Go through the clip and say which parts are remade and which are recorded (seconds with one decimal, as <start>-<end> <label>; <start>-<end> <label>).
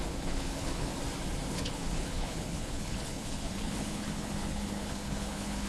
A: 0.0-0.9 remade; 0.9-1.5 recorded; 1.5-5.7 remade